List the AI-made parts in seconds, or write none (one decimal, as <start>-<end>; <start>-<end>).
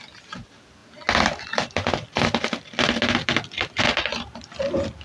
none